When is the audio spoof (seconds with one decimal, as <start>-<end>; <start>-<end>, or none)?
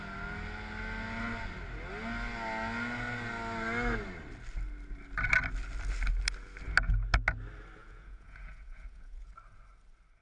7.8-9.3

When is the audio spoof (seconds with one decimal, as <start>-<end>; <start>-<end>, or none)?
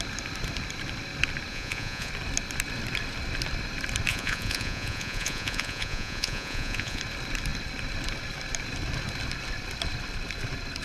1.5-2.1; 4.1-7.0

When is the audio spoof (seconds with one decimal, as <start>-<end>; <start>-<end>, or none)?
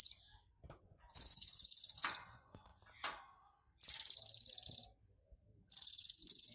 0.8-2.7; 5.7-6.5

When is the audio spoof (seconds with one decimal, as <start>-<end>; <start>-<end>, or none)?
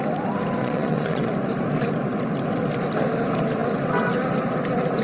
0.6-1.3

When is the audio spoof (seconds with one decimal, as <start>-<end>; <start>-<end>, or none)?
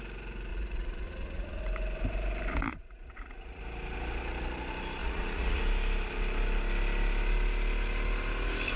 0.5-1.6; 2.7-3.6; 5.0-5.6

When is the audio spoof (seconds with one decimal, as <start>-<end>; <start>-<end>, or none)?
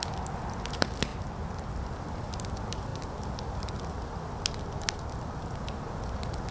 none